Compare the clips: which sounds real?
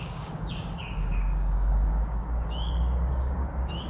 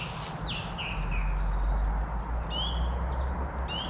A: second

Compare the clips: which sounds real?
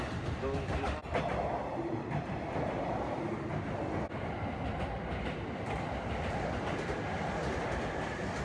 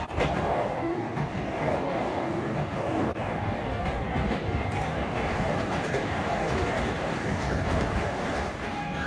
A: first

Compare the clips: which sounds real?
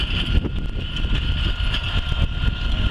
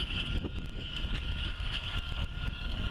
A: first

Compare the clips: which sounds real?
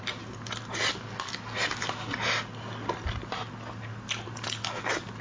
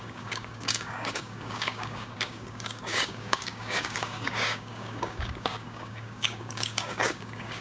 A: first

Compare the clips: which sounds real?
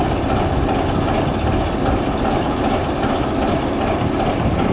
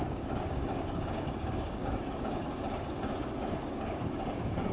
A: first